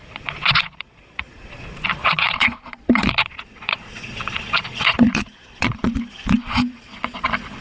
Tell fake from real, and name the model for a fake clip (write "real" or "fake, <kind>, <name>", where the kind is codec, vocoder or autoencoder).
fake, vocoder, Vocos